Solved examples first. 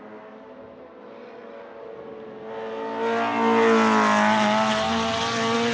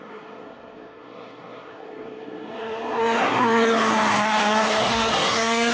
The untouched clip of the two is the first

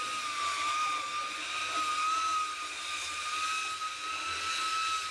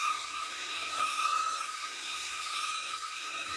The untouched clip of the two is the first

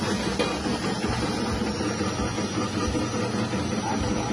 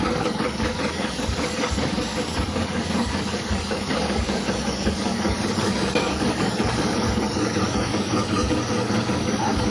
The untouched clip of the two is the first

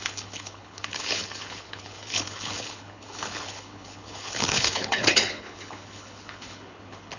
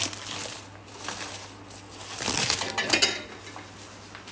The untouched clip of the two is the second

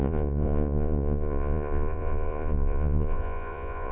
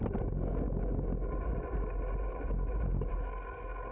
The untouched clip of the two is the second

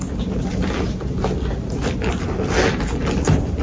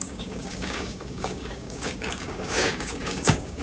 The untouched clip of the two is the first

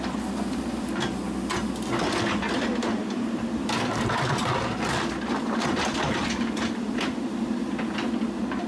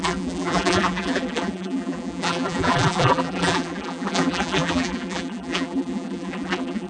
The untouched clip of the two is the first